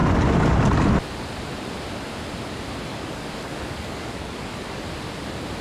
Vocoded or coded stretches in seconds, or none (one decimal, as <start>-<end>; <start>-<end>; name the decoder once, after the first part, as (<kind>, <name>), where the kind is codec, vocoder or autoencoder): 2.9-4.8 (codec, DAC)